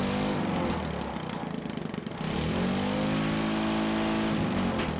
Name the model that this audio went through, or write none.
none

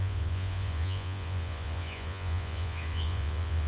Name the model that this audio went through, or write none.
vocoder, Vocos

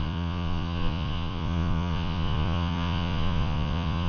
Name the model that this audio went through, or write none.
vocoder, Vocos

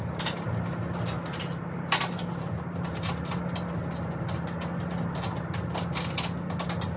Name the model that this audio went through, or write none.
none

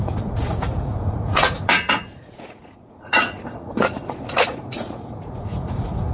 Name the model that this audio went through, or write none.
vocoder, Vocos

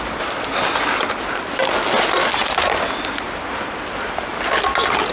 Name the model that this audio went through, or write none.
none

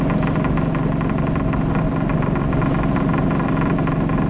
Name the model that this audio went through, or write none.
none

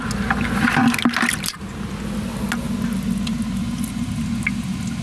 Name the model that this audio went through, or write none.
none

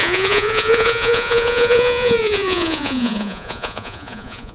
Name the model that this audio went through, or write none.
vocoder, Vocos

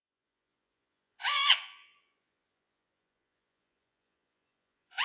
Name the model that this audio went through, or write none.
vocoder, Vocos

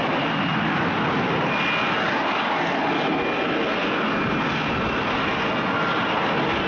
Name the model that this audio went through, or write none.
none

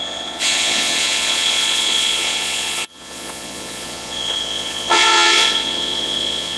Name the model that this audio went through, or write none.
vocoder, Vocos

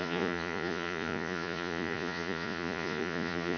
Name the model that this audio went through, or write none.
vocoder, Vocos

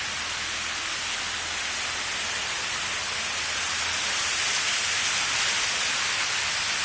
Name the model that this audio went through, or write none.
none